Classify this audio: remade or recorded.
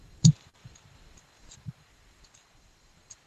remade